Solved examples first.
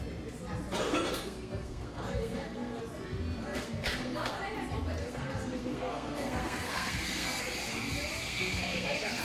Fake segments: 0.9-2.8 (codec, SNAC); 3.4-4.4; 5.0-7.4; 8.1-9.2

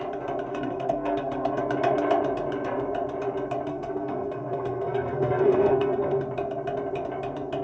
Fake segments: 0.5-1.6 (codec, SNAC); 3.7-6.2

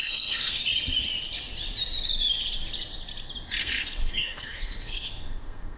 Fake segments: 0.0-0.6 (codec, SNAC); 3.6-5.8

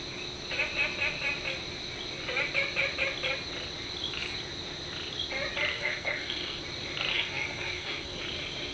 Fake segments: 5.7-6.6 (codec, SNAC); 7.1-8.2

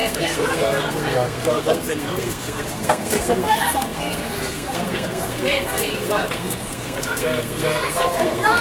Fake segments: 0.0-8.6 (codec, SNAC)

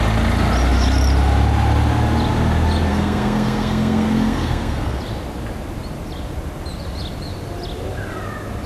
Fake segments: 2.9-5.0 (codec, SNAC)